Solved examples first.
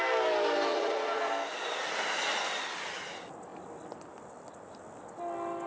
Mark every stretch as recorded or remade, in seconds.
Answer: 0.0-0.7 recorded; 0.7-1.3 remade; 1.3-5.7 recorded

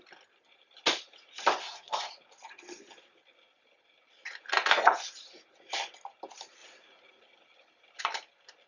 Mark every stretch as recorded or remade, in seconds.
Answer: 0.0-1.6 recorded; 1.6-2.1 remade; 2.1-8.7 recorded

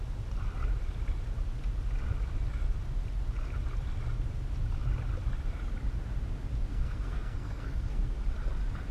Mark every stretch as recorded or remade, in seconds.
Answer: 0.0-6.7 recorded; 6.7-8.2 remade; 8.2-8.9 recorded